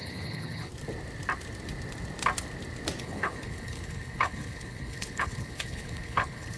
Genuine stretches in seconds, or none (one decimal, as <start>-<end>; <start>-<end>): 0.7-3.0